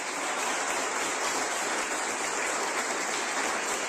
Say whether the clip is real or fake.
real